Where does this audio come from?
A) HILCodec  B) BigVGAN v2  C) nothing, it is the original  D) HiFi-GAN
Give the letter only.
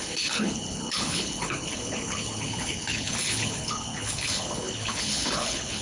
A